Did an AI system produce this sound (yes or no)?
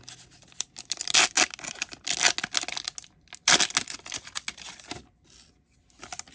no